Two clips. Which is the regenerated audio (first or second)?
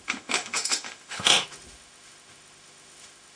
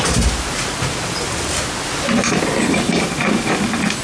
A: first